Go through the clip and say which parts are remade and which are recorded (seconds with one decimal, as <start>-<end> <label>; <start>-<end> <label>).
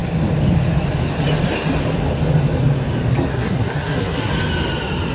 0.0-3.3 recorded; 3.3-4.3 remade; 4.3-5.1 recorded